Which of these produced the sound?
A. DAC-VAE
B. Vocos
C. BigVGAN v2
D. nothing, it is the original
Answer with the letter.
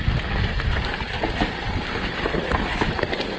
D